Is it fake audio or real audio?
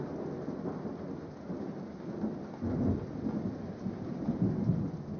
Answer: real